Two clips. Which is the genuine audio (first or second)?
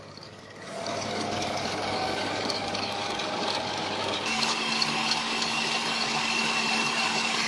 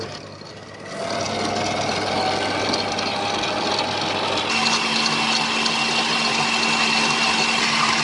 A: second